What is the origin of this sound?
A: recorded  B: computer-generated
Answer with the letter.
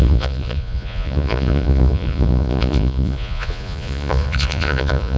B